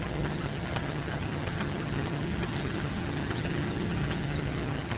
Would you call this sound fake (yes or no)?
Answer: yes